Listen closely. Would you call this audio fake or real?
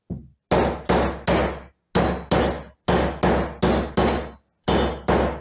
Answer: real